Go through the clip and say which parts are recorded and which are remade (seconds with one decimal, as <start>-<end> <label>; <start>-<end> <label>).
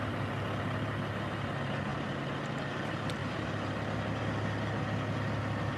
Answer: 0.0-5.8 recorded